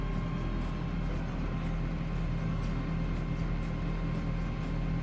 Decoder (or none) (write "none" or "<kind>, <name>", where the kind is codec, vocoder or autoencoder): none